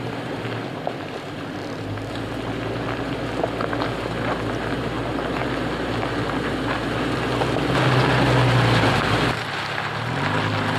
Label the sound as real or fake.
real